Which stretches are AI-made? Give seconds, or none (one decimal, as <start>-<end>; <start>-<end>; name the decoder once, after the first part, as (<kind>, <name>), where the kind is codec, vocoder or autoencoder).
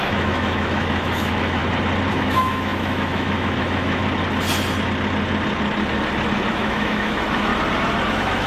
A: 0.0-1.6 (autoencoder, DAC-VAE); 2.1-4.0; 6.5-7.5; 8.1-8.5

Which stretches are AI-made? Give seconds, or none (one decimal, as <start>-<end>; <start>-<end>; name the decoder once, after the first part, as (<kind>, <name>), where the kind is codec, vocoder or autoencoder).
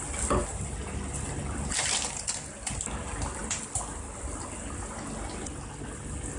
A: none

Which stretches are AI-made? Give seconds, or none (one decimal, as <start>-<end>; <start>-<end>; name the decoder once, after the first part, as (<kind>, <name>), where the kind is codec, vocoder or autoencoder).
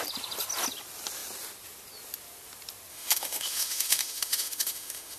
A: 2.9-5.2 (autoencoder, DAC-VAE)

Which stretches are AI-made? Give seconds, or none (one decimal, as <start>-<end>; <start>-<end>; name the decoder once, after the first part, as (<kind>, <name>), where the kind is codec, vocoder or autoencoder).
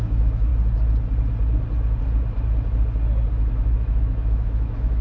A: 0.0-0.5 (autoencoder, DAC-VAE); 3.5-5.0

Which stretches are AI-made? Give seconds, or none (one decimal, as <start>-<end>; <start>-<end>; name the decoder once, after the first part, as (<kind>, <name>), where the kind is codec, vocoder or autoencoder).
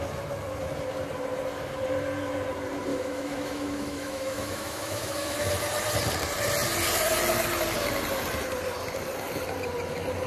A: 2.9-5.5 (autoencoder, DAC-VAE)